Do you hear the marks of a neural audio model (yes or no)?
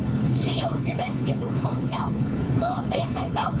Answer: yes